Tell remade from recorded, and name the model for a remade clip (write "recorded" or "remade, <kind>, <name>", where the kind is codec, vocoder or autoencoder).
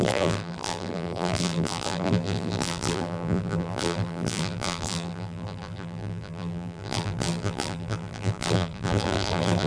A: remade, vocoder, BigVGAN v2